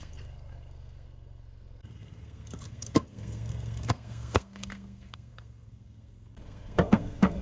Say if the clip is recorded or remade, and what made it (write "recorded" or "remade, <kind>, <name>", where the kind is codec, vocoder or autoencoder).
remade, codec, SNAC